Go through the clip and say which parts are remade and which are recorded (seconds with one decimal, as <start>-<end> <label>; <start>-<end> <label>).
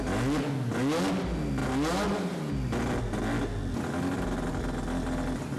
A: 0.0-5.6 recorded